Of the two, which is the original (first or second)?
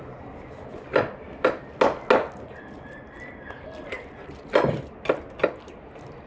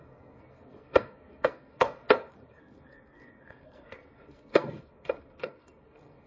first